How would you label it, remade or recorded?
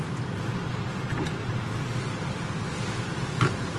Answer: recorded